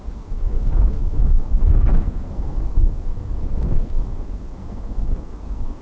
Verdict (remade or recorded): remade